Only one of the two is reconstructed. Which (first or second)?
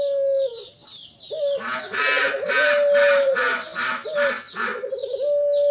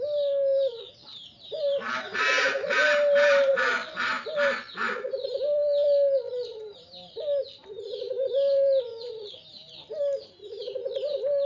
second